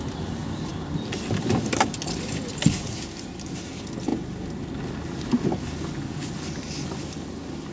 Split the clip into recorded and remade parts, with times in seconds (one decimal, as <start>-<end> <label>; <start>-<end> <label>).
0.0-7.7 recorded